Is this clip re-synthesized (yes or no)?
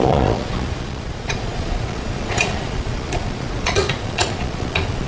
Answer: yes